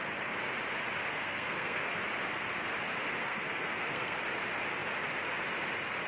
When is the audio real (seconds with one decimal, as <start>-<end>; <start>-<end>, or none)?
0.0-1.1; 1.9-3.2; 4.2-6.1